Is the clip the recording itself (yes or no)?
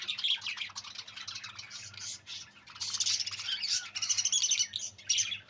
yes